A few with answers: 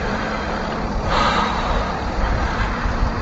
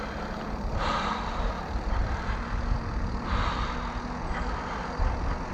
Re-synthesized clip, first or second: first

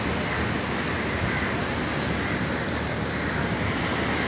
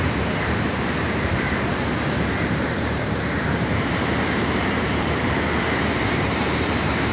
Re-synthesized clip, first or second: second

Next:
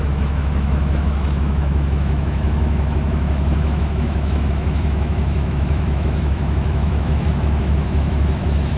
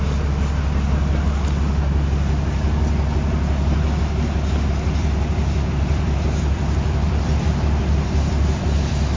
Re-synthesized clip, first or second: first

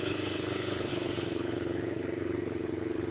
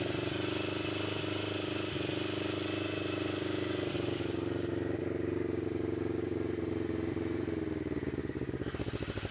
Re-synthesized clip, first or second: first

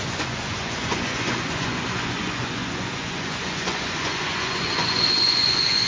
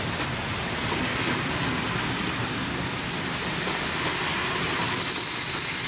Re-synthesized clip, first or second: first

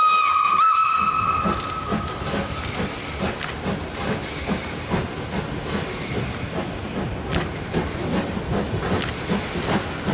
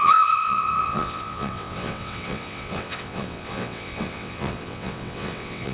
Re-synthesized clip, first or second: second